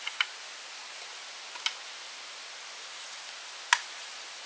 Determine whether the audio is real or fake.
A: real